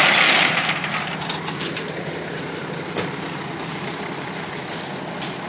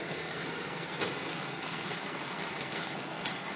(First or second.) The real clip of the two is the first